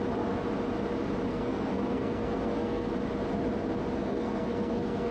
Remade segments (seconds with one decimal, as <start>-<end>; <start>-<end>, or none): 1.3-2.9; 4.0-5.1